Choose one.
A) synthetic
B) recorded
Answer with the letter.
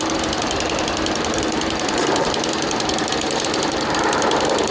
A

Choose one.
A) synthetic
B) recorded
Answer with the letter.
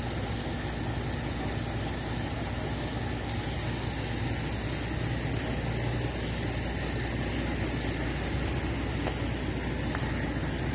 B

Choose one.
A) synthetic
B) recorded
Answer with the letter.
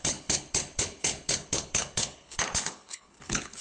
A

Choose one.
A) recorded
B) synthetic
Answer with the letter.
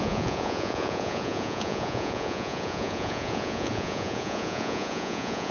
B